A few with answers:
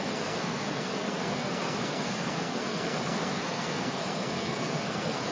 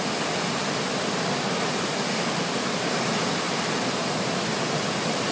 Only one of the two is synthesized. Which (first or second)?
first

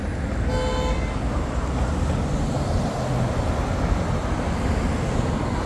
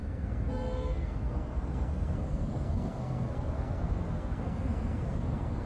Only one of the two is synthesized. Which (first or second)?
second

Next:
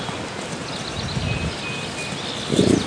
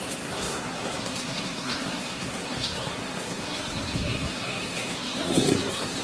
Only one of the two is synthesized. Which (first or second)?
second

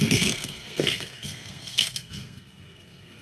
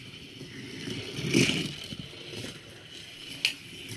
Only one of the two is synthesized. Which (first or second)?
first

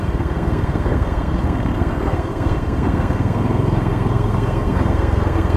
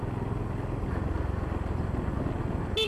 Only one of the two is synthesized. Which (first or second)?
first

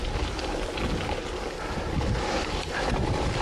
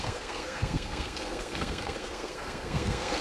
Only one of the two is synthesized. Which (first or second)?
second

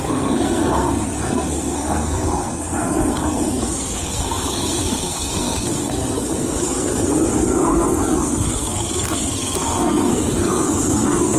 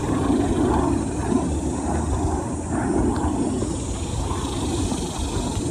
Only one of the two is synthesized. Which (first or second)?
first